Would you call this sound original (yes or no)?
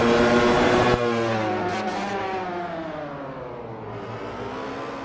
yes